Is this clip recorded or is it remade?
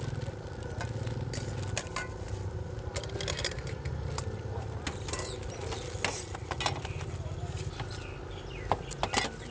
recorded